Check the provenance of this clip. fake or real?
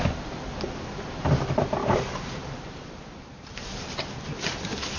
real